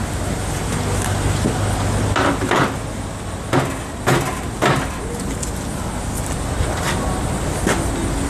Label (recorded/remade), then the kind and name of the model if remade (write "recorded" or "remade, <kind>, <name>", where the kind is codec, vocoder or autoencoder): recorded